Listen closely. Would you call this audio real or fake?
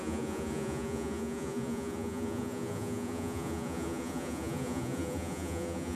fake